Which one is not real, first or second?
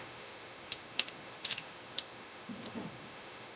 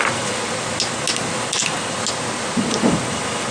first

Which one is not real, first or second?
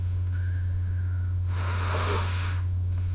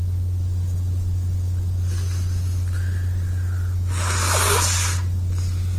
first